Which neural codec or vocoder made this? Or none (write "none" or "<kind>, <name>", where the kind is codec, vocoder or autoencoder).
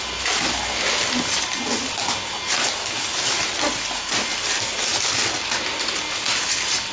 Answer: none